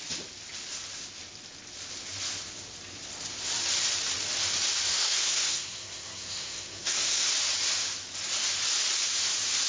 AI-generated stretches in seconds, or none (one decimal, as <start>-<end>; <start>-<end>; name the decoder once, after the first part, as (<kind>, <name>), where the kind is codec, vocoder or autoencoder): 4.9-7.3 (codec, SNAC)